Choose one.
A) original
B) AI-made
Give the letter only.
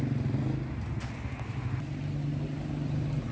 A